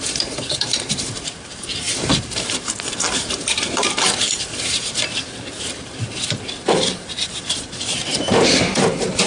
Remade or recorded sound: remade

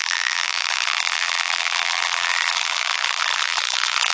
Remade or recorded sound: remade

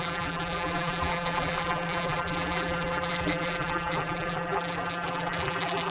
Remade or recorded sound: remade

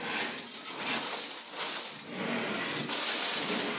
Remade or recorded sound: recorded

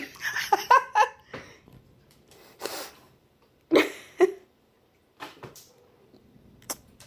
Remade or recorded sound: remade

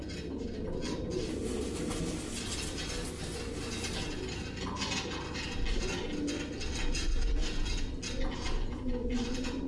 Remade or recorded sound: recorded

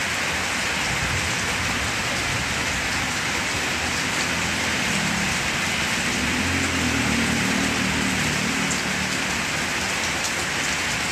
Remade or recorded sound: recorded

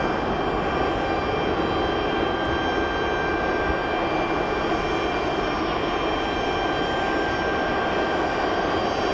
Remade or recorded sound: recorded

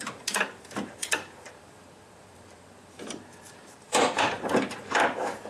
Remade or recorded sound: remade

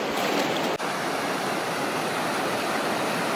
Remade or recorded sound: recorded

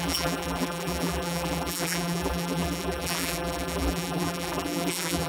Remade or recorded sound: remade